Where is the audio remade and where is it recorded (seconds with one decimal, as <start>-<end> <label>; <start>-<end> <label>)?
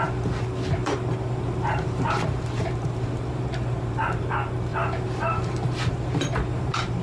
0.0-0.8 recorded; 0.8-4.3 remade; 4.3-4.7 recorded; 4.7-7.0 remade